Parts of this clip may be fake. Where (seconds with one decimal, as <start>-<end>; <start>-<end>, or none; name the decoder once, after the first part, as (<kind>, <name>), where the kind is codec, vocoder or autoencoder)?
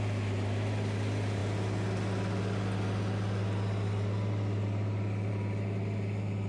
none